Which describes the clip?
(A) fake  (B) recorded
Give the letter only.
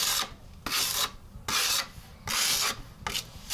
B